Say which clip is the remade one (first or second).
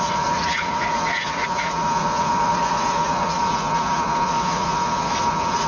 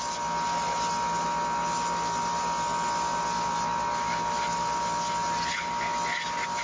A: first